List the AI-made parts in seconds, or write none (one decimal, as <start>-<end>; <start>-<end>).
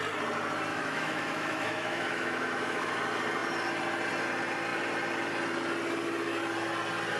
0.7-2.9